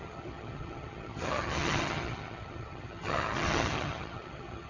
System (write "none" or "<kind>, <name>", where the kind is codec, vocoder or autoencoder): vocoder, HiFi-GAN